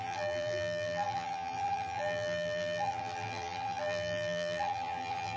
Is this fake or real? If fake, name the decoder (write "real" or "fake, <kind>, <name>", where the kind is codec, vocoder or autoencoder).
fake, vocoder, BigVGAN v2